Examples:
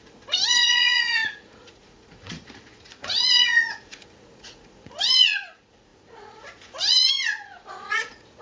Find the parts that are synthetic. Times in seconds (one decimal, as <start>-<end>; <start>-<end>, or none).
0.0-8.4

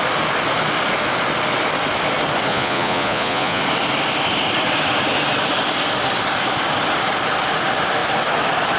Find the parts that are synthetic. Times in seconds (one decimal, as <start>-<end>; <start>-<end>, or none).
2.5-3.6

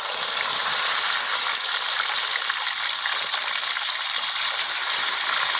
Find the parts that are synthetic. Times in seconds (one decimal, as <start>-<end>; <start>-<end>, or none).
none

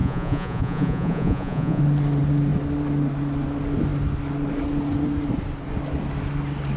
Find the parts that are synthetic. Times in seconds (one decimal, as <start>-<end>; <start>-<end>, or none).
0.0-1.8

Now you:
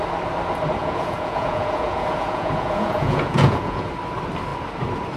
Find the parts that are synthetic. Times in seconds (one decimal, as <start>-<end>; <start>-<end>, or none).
0.8-3.9

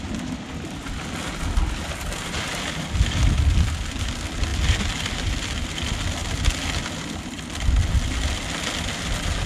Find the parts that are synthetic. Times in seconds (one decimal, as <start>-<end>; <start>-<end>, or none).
none